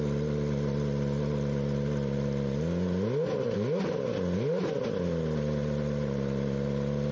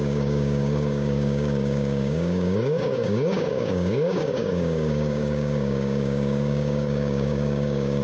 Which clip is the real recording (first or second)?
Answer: first